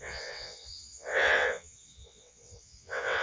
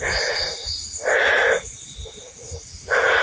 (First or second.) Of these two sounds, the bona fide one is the second